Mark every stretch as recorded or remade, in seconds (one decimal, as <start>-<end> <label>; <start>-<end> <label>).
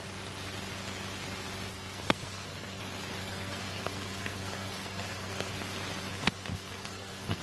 0.0-1.7 recorded; 1.7-2.8 remade; 2.8-3.2 recorded; 3.2-5.5 remade; 5.5-6.1 recorded; 6.1-7.4 remade